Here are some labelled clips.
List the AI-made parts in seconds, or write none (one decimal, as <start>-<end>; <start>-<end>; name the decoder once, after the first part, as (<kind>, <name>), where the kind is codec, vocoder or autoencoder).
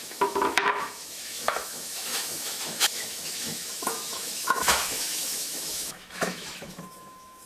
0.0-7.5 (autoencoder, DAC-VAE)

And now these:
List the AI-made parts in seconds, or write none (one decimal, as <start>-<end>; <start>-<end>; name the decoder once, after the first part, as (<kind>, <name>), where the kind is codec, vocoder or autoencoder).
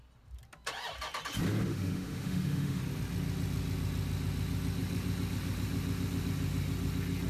1.7-2.8 (autoencoder, DAC-VAE)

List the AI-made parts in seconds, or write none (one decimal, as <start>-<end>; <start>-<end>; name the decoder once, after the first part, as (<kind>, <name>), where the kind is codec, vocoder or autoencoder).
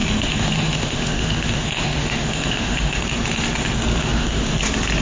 0.0-3.0 (autoencoder, DAC-VAE); 4.0-4.6